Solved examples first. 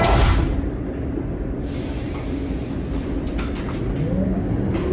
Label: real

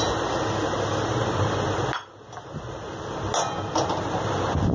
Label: real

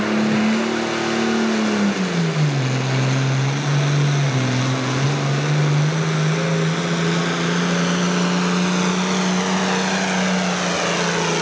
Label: real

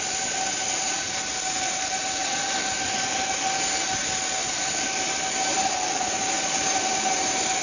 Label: real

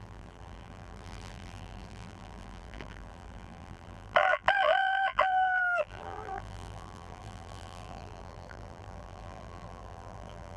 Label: fake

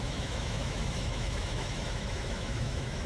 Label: fake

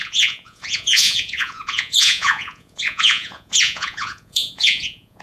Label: fake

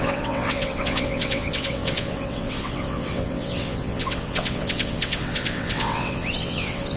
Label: fake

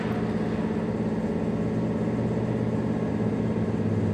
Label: real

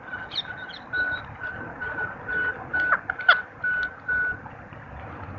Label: real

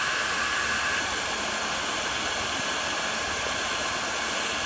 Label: real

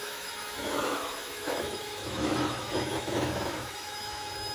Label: fake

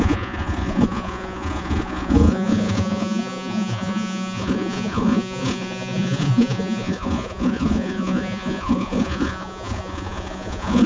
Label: fake